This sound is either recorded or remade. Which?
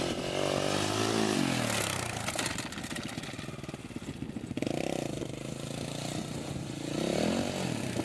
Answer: recorded